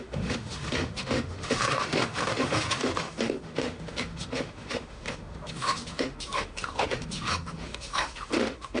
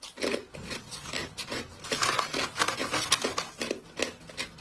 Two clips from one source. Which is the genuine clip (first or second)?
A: second